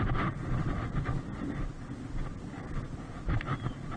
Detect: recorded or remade recorded